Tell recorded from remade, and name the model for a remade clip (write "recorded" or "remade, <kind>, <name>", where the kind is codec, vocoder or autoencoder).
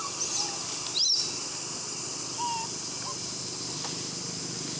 recorded